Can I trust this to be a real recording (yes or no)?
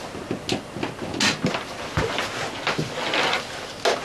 yes